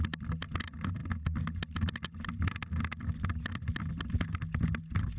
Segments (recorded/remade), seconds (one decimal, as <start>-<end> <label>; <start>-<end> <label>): 0.0-5.2 recorded